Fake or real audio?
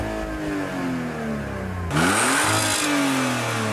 real